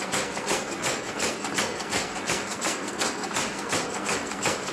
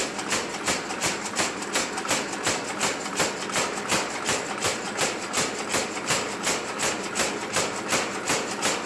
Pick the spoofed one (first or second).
first